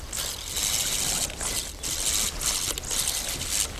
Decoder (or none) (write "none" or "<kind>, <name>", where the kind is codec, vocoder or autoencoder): none